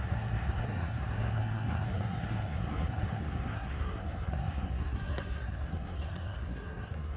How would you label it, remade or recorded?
remade